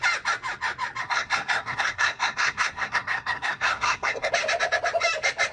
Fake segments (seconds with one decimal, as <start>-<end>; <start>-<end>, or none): 1.0-4.3